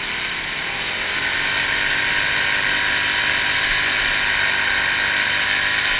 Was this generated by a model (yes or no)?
no